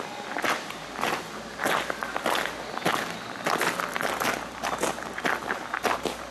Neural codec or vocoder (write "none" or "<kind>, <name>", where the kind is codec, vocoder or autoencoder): none